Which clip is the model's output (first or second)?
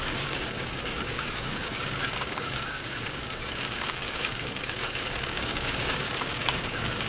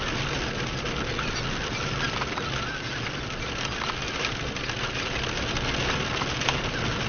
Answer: first